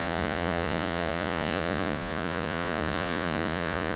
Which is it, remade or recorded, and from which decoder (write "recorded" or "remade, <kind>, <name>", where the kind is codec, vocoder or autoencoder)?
remade, vocoder, Vocos